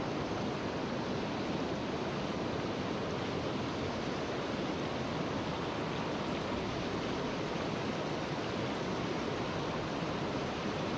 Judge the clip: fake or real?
real